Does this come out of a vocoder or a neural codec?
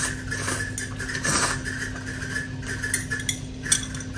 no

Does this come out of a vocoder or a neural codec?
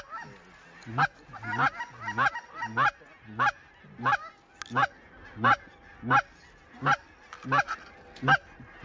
no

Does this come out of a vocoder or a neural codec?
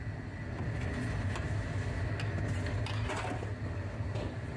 no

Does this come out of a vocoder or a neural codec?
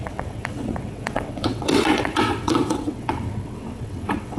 yes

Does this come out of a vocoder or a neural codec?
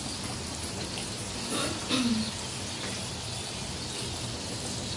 no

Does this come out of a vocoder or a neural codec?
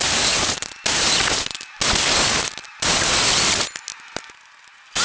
no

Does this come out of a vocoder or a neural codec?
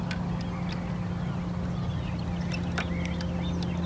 no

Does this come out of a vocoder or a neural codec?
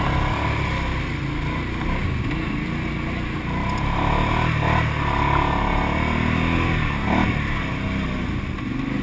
no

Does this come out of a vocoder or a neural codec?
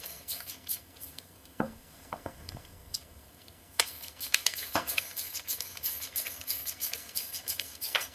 yes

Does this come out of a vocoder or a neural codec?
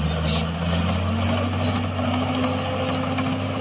no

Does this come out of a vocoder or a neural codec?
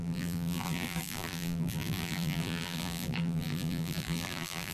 yes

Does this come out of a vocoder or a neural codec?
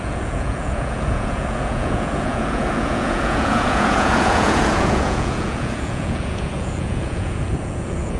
yes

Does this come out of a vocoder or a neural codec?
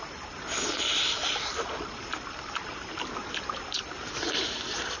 no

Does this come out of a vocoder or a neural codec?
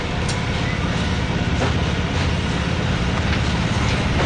no